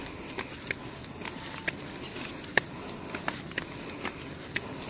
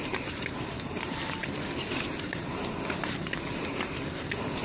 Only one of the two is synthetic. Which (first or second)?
second